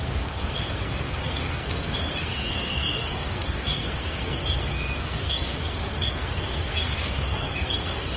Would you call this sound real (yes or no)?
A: no